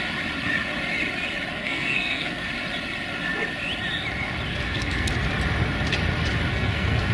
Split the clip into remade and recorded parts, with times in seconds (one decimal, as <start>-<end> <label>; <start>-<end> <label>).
0.0-1.5 recorded; 1.5-2.5 remade; 2.5-4.5 recorded; 4.5-5.1 remade; 5.1-6.5 recorded; 6.5-7.1 remade